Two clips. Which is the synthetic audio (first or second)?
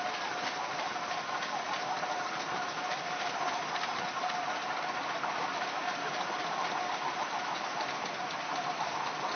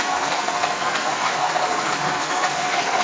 second